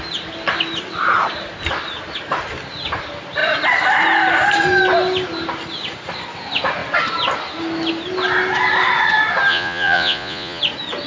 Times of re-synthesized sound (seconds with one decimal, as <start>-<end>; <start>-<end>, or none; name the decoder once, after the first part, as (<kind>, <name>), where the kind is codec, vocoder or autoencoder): 9.5-10.6 (vocoder, Vocos)